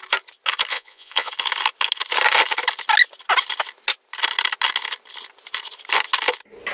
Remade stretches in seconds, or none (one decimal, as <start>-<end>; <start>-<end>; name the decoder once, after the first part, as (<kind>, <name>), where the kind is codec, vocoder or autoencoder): 0.7-1.3 (vocoder, Vocos)